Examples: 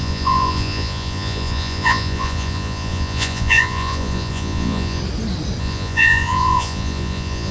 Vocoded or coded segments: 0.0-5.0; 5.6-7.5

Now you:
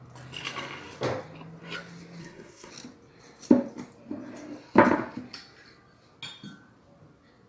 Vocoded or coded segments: 2.2-2.7

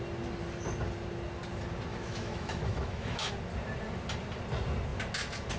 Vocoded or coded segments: 1.9-3.3